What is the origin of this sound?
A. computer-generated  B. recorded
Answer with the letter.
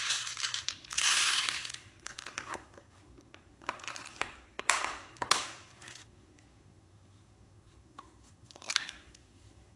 A